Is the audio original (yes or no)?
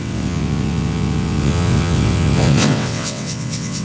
no